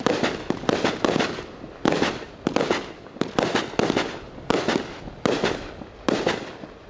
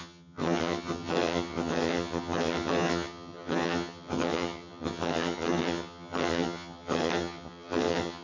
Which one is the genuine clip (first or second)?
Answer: first